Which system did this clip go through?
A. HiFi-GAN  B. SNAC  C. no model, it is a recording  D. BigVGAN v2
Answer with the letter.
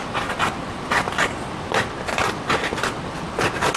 C